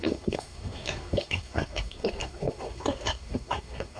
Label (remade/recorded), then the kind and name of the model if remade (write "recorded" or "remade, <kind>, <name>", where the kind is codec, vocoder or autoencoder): remade, codec, SNAC